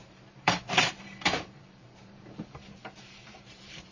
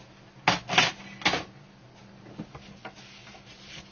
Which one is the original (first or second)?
second